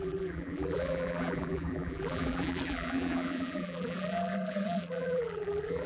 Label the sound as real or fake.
fake